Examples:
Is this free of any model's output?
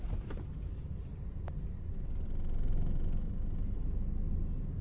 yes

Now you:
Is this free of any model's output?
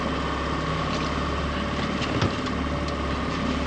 yes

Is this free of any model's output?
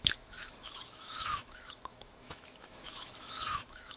no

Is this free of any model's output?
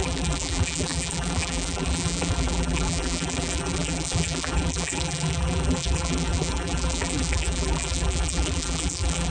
no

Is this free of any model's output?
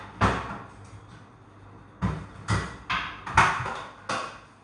yes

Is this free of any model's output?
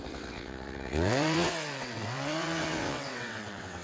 no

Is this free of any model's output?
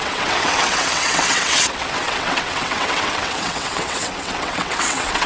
no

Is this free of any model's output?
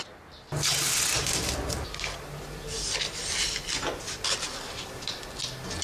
yes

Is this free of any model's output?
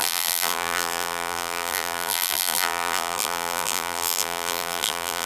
no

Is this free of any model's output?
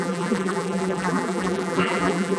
no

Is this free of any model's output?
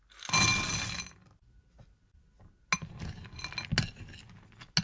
yes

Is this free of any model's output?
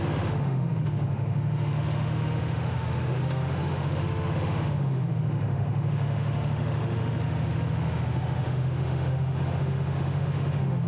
no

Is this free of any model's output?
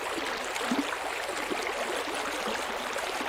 yes